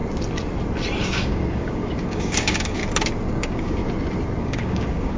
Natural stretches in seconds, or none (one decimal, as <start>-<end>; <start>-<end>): 0.0-1.0; 2.8-3.3; 3.8-4.4